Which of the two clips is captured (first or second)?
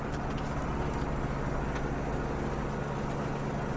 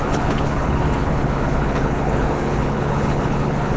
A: first